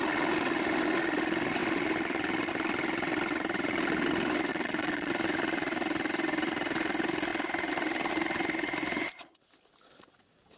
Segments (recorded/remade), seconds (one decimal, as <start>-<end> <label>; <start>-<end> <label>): 0.0-4.5 recorded; 4.5-5.1 remade; 5.1-10.6 recorded